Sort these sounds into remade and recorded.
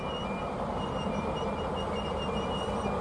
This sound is recorded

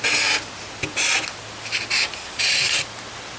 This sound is recorded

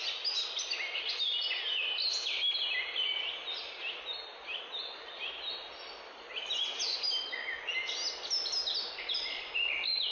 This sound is recorded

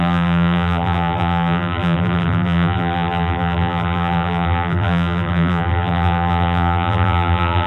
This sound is remade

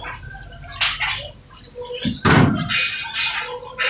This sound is recorded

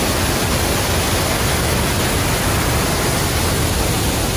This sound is recorded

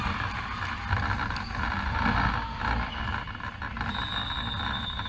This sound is recorded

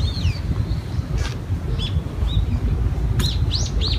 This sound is recorded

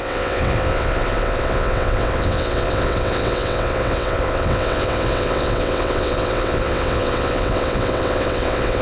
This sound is remade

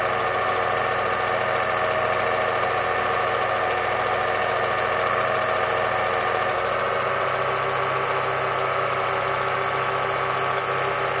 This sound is recorded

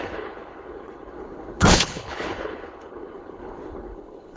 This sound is remade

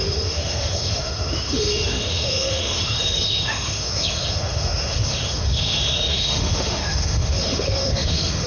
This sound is remade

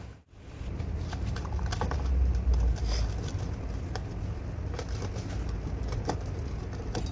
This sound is recorded